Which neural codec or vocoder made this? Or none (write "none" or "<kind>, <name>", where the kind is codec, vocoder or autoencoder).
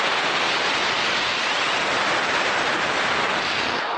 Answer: none